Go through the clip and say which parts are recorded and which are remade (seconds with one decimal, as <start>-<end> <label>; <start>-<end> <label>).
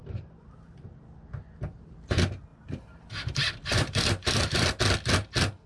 0.0-0.9 remade; 0.9-2.5 recorded; 2.5-4.8 remade; 4.8-5.7 recorded